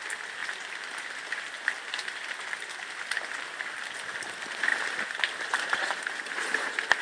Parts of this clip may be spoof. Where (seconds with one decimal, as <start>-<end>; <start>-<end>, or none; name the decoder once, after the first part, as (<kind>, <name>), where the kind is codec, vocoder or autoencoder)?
none